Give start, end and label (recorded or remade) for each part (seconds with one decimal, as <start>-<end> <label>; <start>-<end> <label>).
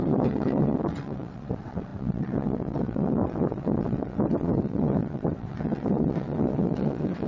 0.0-7.3 remade